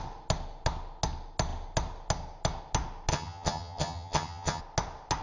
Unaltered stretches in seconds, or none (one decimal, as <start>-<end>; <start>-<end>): 0.0-3.1; 4.6-5.2